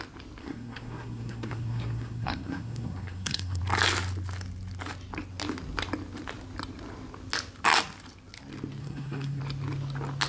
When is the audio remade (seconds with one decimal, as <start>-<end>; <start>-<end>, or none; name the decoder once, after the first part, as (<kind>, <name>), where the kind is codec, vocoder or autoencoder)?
0.4-3.6 (codec, SNAC); 8.8-9.4